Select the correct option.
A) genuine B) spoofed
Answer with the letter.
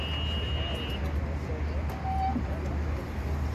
A